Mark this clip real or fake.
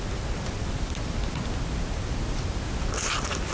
real